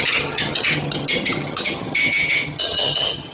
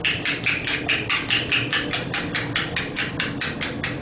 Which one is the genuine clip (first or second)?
second